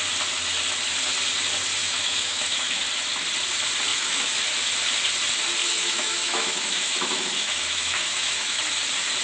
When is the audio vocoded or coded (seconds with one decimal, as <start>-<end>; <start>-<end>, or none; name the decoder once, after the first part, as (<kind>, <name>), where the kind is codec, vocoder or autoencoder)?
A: 1.8-2.8 (autoencoder, DAC-VAE); 3.9-4.4; 5.6-8.6